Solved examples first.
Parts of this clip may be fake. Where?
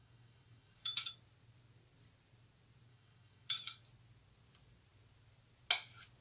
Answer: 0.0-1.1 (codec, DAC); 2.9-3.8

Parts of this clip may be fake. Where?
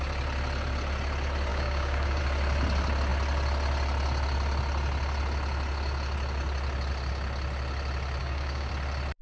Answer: 1.5-2.2 (codec, DAC); 8.2-8.7